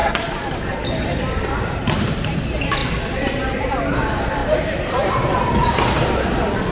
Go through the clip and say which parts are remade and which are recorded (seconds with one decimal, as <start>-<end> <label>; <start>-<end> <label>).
0.0-2.8 remade; 2.8-3.5 recorded; 3.5-6.7 remade